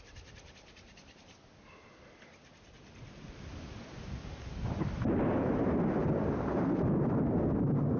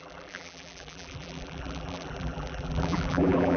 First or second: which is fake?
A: second